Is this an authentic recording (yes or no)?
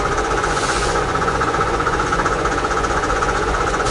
no